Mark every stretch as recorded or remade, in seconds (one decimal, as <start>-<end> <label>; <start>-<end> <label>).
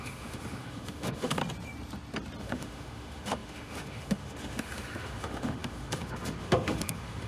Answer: 0.0-1.4 remade; 1.4-2.4 recorded; 2.4-7.3 remade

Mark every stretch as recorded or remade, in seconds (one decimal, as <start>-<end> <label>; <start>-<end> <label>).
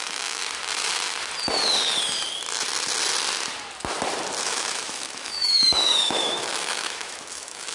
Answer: 0.0-0.4 remade; 0.4-4.4 recorded; 4.4-7.7 remade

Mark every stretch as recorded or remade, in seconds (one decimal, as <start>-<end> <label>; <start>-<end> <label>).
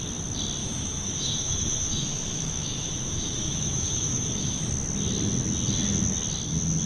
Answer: 0.0-0.6 recorded; 0.6-4.7 remade; 4.7-6.9 recorded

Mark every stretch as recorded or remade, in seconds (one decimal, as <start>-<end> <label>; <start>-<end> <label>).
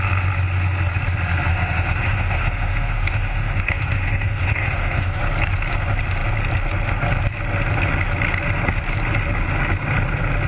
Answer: 0.0-1.5 recorded; 1.5-5.2 remade; 5.2-10.5 recorded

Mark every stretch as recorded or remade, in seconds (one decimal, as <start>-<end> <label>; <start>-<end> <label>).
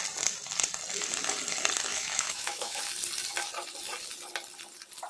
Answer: 0.0-1.9 recorded; 1.9-2.8 remade; 2.8-5.1 recorded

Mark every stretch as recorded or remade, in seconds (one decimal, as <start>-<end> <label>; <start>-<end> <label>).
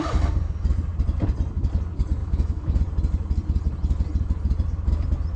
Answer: 0.0-2.2 recorded; 2.2-2.8 remade; 2.8-5.4 recorded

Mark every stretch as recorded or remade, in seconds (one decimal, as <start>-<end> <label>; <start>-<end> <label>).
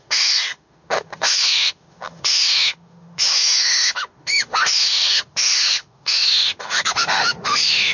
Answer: 0.0-7.9 remade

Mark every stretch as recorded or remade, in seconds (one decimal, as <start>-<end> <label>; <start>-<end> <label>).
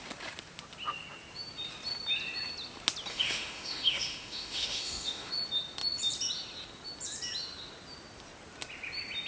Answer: 0.0-3.1 recorded; 3.1-5.3 remade; 5.3-9.3 recorded